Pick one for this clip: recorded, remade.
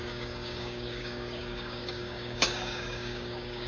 remade